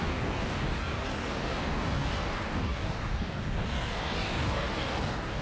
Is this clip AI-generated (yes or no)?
yes